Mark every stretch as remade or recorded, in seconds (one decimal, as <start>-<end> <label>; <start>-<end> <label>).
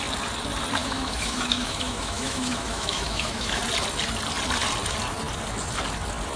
0.0-0.8 recorded; 0.8-3.6 remade; 3.6-6.4 recorded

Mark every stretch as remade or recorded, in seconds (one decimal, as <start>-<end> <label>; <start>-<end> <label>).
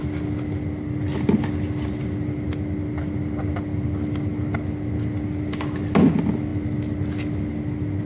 0.0-8.1 recorded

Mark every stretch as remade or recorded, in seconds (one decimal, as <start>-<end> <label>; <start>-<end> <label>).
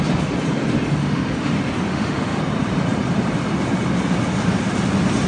0.0-1.0 recorded; 1.0-1.5 remade; 1.5-1.9 recorded; 1.9-2.4 remade; 2.4-5.3 recorded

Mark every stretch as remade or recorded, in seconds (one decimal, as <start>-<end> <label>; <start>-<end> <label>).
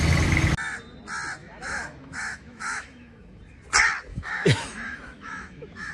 0.0-1.4 recorded; 1.4-3.4 remade; 3.4-4.1 recorded; 4.1-5.9 remade